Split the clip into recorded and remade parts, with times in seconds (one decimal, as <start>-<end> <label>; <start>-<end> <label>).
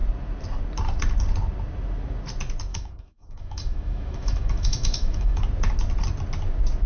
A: 0.0-2.7 recorded; 2.7-5.4 remade; 5.4-6.9 recorded